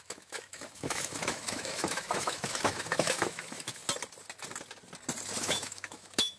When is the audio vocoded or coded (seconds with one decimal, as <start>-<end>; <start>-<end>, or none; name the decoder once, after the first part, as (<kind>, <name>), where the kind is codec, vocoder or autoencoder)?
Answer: 0.0-3.8 (autoencoder, DAC-VAE); 5.4-6.4